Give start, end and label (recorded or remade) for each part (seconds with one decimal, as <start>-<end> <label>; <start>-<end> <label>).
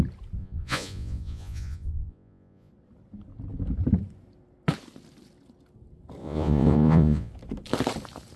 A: 0.0-0.4 recorded; 0.4-2.7 remade; 2.7-6.2 recorded; 6.2-7.3 remade; 7.3-8.4 recorded